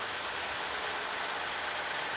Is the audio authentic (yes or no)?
yes